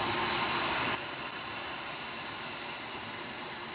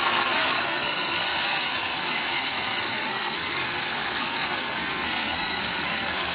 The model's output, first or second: second